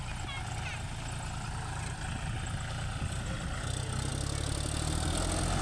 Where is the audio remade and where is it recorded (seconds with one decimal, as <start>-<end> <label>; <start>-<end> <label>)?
0.0-5.6 recorded